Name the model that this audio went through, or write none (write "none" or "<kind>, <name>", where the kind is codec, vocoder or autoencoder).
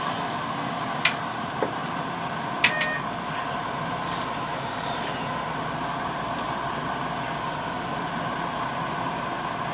none